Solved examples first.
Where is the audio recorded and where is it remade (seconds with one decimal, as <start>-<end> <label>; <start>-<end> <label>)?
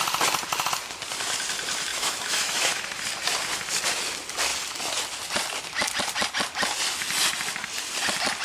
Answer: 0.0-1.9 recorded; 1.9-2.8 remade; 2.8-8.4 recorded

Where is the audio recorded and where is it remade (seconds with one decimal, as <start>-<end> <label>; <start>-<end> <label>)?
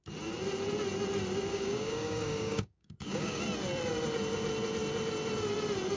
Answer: 0.0-1.5 recorded; 1.5-3.4 remade; 3.4-6.0 recorded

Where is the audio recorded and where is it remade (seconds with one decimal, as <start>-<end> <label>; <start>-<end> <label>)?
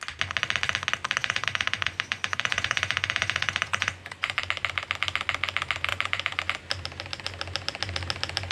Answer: 0.0-1.2 recorded; 1.2-4.4 remade; 4.4-5.9 recorded; 5.9-6.4 remade; 6.4-8.5 recorded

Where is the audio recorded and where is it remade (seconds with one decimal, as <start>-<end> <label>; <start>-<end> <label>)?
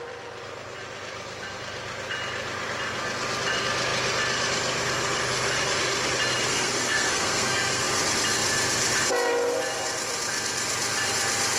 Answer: 0.0-6.5 recorded; 6.5-7.8 remade; 7.8-11.6 recorded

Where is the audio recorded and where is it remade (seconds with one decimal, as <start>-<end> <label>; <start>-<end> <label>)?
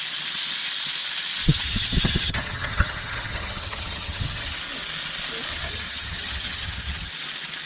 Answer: 0.0-1.4 recorded; 1.4-4.6 remade; 4.6-5.5 recorded; 5.5-7.1 remade; 7.1-7.7 recorded